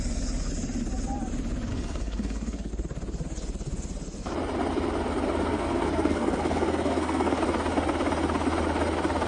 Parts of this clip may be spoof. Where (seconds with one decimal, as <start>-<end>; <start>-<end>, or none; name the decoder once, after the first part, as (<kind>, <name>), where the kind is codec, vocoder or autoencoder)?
1.7-2.7 (codec, SNAC); 5.5-7.4